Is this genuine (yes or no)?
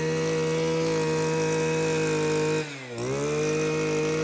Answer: yes